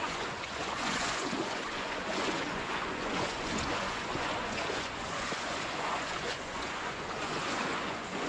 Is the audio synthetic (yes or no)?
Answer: yes